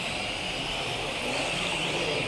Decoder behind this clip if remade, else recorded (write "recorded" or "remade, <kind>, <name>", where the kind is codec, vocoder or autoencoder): recorded